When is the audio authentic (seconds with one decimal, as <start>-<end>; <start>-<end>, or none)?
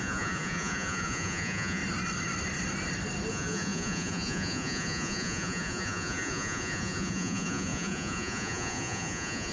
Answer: 1.8-3.3